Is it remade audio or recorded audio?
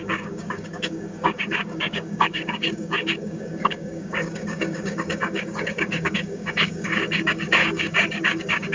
remade